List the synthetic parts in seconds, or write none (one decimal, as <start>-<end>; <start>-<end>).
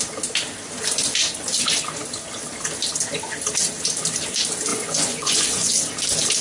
4.7-5.7